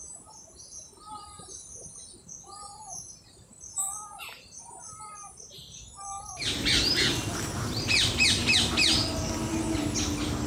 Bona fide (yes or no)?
yes